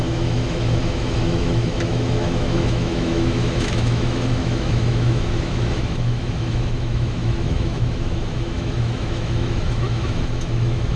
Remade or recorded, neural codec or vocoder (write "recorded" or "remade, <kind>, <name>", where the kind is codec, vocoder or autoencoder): remade, autoencoder, DAC-VAE